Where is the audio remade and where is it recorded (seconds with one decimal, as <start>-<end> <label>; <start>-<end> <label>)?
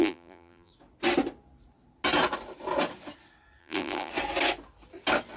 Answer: 0.0-0.7 remade; 0.7-3.6 recorded; 3.6-4.1 remade; 4.1-5.4 recorded